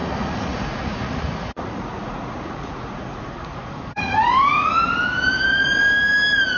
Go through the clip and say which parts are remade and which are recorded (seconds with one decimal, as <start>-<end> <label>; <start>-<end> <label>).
0.0-4.8 remade; 4.8-6.6 recorded

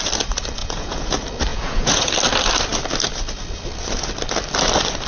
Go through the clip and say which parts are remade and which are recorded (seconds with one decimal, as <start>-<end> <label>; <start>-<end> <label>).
0.0-0.6 recorded; 0.6-1.1 remade; 1.1-1.5 recorded; 1.5-2.1 remade; 2.1-5.1 recorded

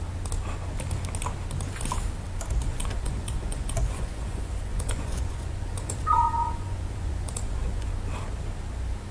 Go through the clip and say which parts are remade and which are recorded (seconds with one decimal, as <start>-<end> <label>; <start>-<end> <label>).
0.0-2.7 recorded; 2.7-7.9 remade; 7.9-9.1 recorded